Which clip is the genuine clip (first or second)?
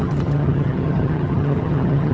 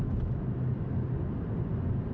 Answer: second